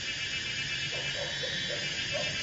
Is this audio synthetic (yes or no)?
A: no